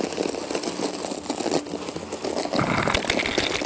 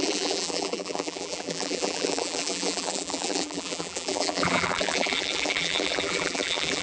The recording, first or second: first